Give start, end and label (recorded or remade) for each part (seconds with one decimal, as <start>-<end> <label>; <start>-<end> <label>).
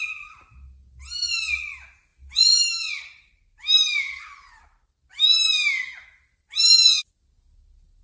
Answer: 0.0-8.0 recorded